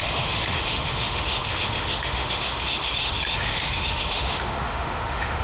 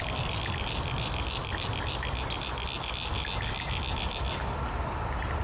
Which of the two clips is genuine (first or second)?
second